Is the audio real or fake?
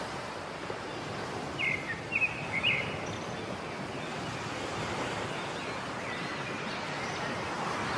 real